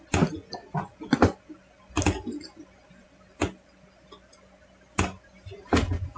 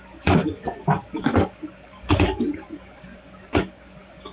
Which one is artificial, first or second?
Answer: second